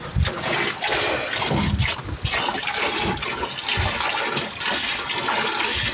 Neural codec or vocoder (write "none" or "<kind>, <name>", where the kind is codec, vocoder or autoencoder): none